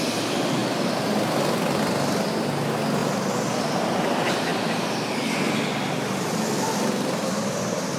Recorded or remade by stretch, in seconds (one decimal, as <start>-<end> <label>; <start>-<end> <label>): 0.0-8.0 recorded